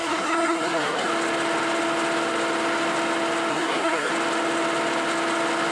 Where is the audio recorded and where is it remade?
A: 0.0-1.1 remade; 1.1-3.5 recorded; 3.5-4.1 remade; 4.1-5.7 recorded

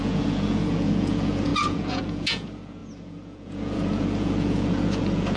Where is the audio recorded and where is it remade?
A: 0.0-5.4 remade

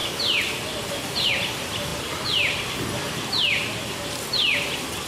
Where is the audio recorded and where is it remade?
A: 0.0-5.1 recorded

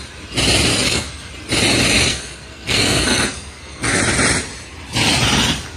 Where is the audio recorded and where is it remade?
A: 0.0-0.7 recorded; 0.7-1.3 remade; 1.3-2.1 recorded; 2.1-4.0 remade; 4.0-5.8 recorded